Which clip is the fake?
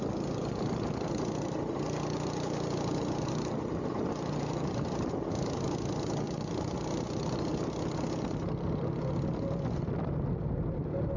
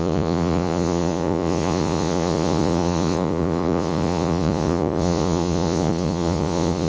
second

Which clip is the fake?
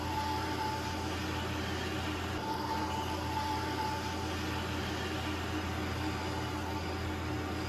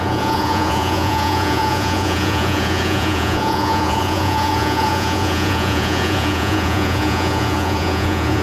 second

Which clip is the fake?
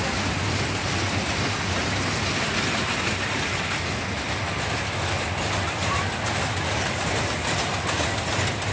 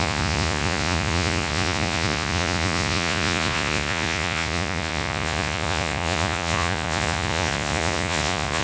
second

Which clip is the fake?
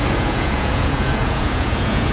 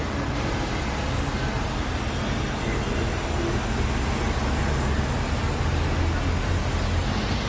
first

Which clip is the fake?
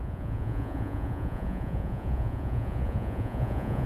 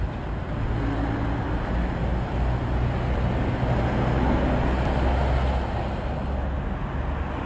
first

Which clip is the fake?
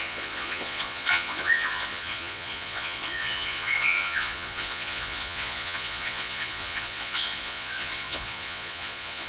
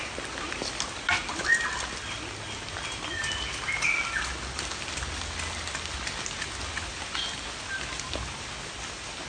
first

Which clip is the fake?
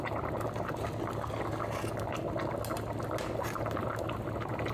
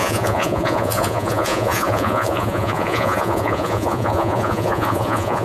second